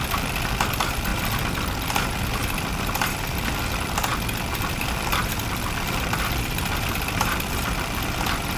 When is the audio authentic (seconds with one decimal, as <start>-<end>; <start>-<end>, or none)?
1.1-3.5